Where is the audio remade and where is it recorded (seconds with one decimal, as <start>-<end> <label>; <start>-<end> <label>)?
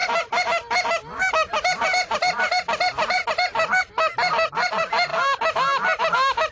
0.0-6.5 recorded